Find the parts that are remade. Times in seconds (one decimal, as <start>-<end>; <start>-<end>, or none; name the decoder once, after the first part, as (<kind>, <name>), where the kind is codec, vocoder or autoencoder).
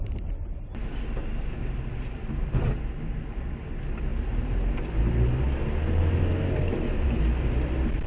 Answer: none